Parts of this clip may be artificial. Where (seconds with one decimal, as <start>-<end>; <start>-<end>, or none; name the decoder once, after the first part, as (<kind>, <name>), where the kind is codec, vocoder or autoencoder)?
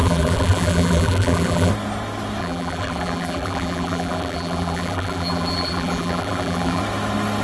0.0-1.7 (vocoder, BigVGAN v2); 2.4-6.8